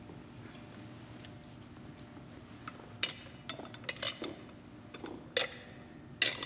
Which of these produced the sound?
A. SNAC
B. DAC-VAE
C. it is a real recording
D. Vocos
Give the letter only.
C